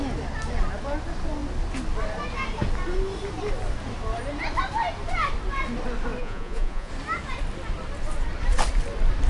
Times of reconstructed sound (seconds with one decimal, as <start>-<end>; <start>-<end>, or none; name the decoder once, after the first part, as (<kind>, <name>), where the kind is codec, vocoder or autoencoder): 6.2-6.9 (vocoder, Vocos)